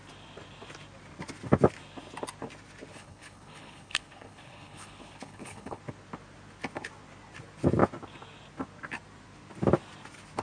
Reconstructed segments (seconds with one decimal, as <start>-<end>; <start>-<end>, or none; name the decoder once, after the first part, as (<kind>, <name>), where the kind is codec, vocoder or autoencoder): 2.9-5.8 (codec, HILCodec)